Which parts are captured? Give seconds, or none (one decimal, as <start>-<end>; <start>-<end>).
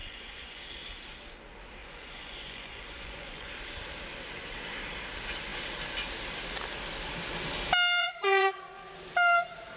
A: 0.6-1.8; 3.5-8.0; 8.6-9.8